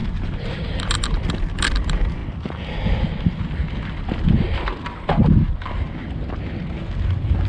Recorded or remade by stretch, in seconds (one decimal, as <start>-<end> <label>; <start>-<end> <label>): 0.0-0.8 remade; 0.8-7.5 recorded